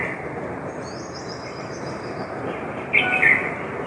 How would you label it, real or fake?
fake